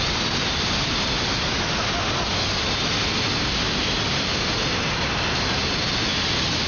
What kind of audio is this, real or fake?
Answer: real